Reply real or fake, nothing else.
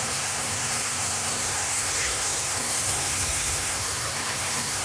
fake